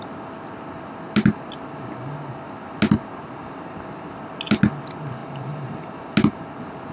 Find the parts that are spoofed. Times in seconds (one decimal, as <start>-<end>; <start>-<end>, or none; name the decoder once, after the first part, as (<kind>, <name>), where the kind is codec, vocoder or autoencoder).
3.4-4.1 (vocoder, BigVGAN v2); 5.2-6.0